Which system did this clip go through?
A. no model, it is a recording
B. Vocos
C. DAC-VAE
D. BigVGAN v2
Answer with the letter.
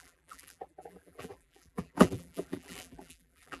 D